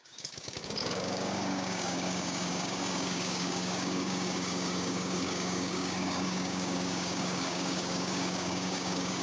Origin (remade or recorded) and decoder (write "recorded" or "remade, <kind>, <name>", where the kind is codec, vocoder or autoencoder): remade, codec, DAC